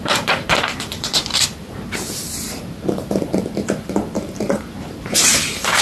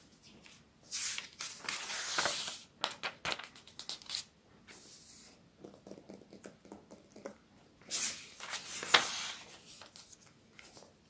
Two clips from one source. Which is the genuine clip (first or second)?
second